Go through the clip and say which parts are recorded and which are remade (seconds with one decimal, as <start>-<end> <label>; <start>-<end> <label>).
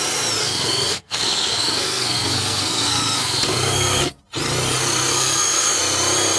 0.0-0.4 recorded; 0.4-4.2 remade; 4.2-5.1 recorded; 5.1-5.8 remade; 5.8-6.4 recorded